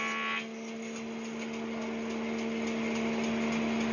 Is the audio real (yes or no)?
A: yes